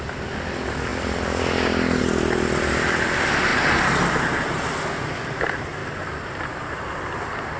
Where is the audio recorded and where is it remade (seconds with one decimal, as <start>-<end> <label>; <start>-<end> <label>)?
0.0-5.8 recorded; 5.8-6.9 remade; 6.9-7.6 recorded